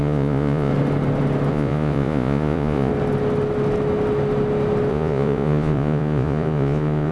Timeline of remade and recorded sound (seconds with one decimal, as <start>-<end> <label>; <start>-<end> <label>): 0.0-0.7 remade; 0.7-1.5 recorded; 1.5-2.9 remade; 2.9-4.9 recorded; 4.9-7.1 remade